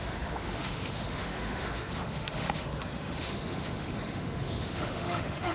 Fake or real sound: fake